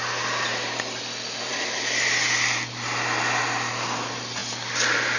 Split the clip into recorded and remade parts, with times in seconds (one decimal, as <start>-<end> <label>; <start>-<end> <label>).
0.0-5.2 recorded